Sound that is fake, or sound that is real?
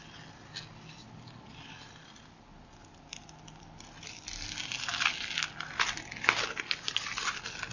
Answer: real